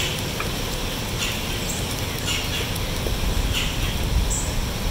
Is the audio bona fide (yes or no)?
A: yes